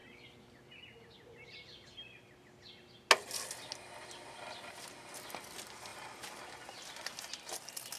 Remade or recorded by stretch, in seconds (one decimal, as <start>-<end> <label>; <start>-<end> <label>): 0.0-8.0 recorded